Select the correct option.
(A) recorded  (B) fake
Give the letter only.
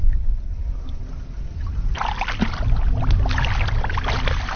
A